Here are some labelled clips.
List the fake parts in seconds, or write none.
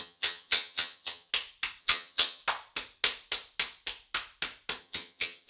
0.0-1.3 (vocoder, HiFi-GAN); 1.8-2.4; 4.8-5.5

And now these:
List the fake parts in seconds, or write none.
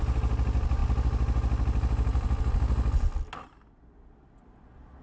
none